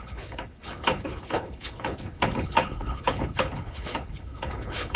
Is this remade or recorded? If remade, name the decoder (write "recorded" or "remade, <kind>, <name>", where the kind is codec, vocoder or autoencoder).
remade, codec, HILCodec